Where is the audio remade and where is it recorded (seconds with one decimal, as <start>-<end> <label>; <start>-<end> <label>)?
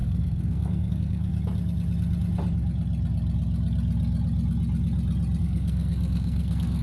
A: 0.0-1.3 remade; 1.3-5.4 recorded; 5.4-6.8 remade